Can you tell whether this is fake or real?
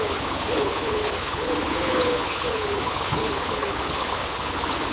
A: fake